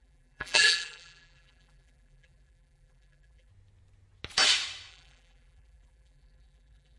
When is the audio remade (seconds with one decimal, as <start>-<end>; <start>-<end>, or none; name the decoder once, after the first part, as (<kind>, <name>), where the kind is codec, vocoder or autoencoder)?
0.0-3.5 (vocoder, BigVGAN v2); 4.9-7.0